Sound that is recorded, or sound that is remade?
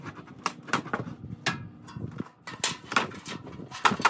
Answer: recorded